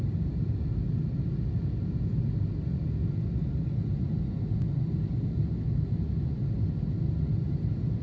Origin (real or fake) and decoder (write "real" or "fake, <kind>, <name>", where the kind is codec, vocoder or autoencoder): real